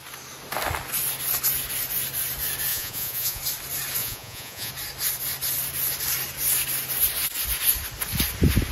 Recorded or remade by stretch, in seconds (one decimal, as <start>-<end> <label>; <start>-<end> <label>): 0.0-2.7 recorded; 2.7-3.4 remade; 3.4-4.0 recorded; 4.0-4.7 remade; 4.7-8.7 recorded